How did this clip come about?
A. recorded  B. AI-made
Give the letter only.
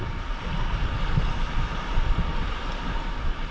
A